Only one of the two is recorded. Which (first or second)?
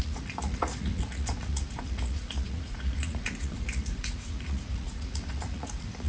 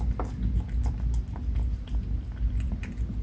second